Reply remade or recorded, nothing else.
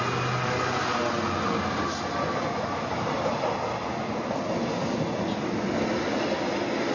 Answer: recorded